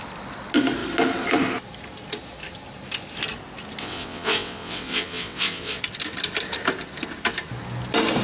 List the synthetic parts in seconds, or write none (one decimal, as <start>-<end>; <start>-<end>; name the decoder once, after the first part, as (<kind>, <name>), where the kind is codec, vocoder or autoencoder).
3.8-5.8 (vocoder, WaveNeXt)